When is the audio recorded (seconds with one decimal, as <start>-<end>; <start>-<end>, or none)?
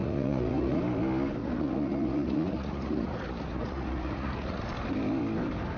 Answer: 0.8-1.4; 4.6-5.8